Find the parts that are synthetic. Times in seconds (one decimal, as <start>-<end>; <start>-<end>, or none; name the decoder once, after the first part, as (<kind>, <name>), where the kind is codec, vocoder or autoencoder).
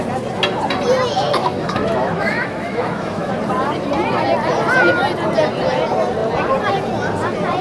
1.4-3.3 (autoencoder, DAC-VAE)